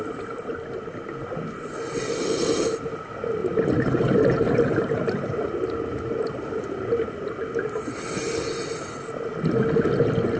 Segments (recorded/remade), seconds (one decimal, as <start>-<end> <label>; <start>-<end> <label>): 0.0-3.4 recorded; 3.4-7.4 remade; 7.4-10.4 recorded